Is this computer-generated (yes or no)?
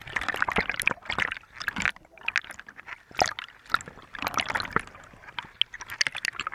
no